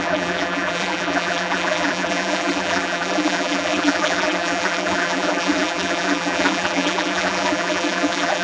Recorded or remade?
remade